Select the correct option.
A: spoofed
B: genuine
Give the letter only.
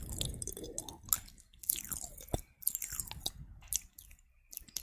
B